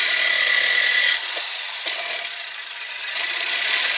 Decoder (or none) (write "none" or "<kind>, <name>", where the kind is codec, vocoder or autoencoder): vocoder, Vocos